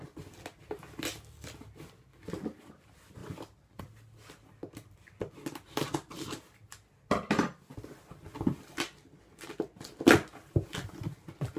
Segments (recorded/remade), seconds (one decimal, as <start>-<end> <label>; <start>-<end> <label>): 0.0-11.6 recorded